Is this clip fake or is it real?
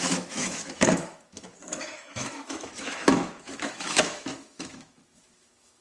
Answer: fake